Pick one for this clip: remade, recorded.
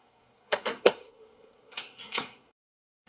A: remade